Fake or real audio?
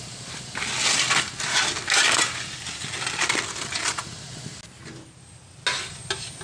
real